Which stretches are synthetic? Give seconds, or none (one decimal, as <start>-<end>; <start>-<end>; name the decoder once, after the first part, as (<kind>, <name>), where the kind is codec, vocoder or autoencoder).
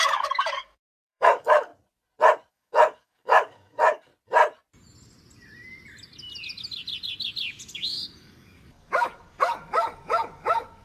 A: 0.0-1.7 (codec, DAC); 2.5-4.1; 7.7-10.8